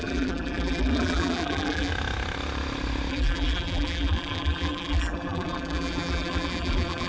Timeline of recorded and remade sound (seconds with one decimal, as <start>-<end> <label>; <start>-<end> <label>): 0.0-1.9 remade; 1.9-3.1 recorded; 3.1-7.1 remade